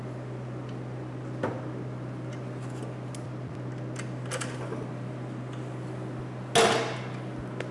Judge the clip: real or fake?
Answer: real